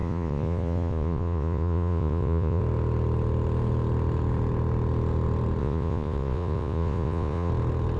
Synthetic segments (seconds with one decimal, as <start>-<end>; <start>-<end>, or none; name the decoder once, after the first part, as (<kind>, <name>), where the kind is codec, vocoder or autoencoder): 0.0-2.6 (vocoder, Vocos); 5.6-7.5